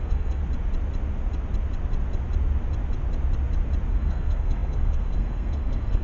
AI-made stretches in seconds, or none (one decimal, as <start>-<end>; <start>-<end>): 0.0-0.4; 3.9-6.0